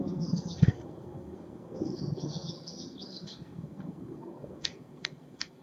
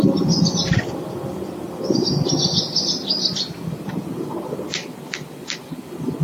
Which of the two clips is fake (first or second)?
first